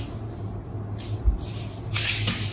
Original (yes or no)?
yes